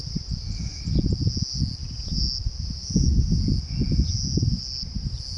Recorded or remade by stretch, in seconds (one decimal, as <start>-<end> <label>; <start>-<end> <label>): 0.0-5.4 recorded